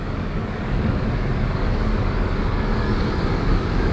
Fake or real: fake